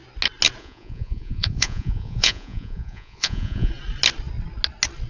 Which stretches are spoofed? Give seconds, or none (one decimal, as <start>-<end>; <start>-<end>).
0.6-3.7